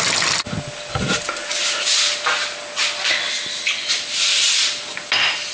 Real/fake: real